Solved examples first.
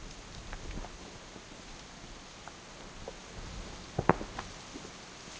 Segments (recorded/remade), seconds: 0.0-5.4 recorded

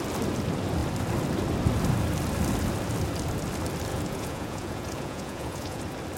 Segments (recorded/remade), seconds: 0.0-3.9 recorded; 3.9-5.8 remade; 5.8-6.2 recorded